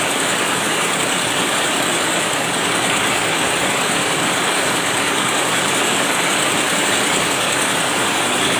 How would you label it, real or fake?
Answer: fake